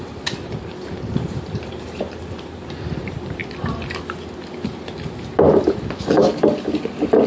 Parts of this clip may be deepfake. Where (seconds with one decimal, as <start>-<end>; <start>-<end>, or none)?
0.0-3.4